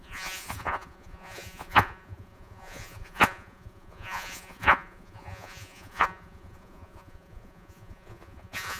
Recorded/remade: remade